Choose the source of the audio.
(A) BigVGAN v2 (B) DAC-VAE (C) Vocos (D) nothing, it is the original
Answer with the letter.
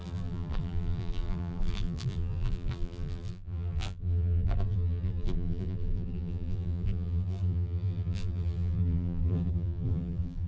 A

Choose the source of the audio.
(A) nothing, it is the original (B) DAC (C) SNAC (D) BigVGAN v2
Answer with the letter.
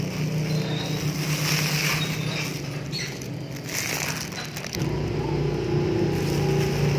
A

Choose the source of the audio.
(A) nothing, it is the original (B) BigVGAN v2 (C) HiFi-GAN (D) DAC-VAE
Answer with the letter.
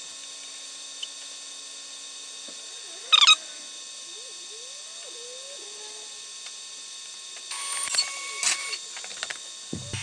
A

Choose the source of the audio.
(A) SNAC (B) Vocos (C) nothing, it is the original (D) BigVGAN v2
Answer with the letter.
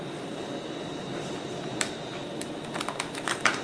D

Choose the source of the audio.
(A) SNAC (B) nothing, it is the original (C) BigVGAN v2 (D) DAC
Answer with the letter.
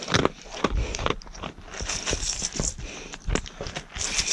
C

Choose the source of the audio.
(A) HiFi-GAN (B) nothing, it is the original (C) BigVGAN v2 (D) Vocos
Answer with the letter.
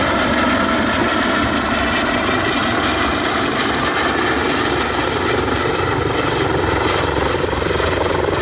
B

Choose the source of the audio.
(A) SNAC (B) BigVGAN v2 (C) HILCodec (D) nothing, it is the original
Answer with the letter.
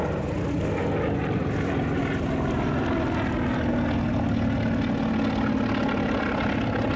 D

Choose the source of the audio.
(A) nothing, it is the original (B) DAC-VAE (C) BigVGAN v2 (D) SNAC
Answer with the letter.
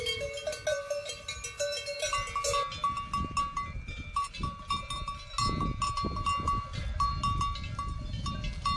A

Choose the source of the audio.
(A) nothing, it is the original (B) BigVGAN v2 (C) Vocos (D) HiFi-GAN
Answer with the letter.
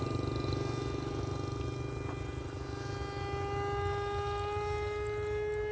A